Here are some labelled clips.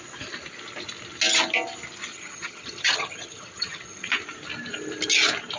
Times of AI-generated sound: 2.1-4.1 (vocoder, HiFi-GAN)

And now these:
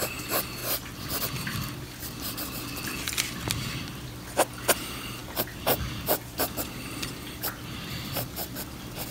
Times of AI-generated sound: none

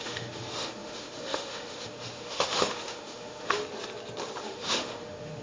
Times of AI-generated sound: 0.0-3.6 (autoencoder, DAC-VAE); 4.4-5.4

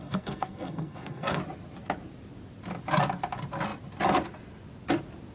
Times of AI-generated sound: 0.0-1.4 (codec, SNAC)

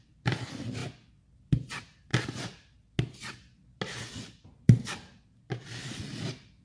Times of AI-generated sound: none

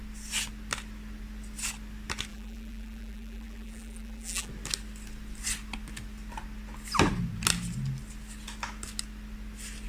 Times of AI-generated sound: 2.3-4.5 (vocoder, BigVGAN v2)